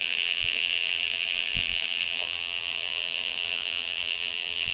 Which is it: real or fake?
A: fake